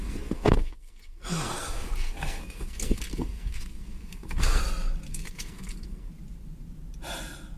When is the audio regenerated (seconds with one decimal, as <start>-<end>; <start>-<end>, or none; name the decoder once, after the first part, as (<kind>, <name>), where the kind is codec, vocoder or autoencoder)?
0.0-4.6 (codec, SNAC); 5.1-6.1